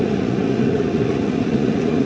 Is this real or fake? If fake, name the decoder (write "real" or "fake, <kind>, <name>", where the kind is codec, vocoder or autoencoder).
fake, vocoder, Vocos